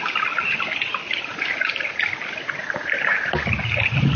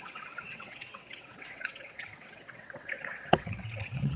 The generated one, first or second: second